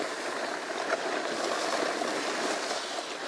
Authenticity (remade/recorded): recorded